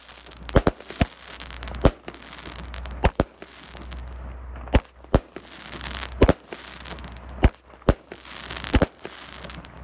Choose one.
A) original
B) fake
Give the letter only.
A